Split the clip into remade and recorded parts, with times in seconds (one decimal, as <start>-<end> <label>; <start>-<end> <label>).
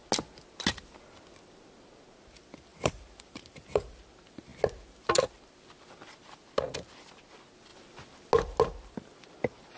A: 0.0-2.7 recorded; 2.7-3.9 remade; 3.9-9.8 recorded